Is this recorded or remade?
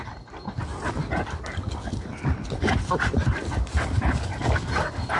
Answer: recorded